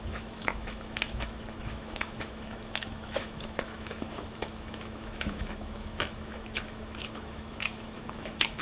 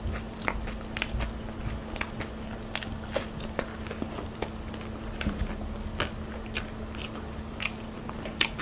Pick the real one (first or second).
second